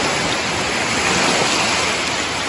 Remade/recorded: recorded